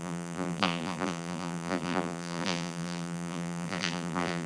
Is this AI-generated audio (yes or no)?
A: yes